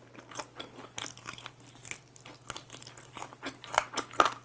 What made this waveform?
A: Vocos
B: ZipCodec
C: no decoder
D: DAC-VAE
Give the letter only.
C